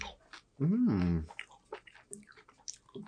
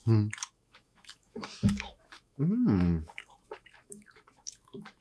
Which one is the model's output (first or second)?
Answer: second